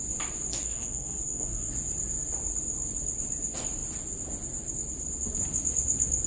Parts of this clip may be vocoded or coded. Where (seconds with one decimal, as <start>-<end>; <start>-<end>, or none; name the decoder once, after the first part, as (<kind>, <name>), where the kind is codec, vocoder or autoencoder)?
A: 0.6-1.7 (codec, SNAC)